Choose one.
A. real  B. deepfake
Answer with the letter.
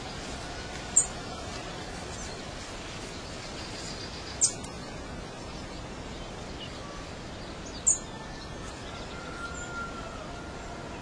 A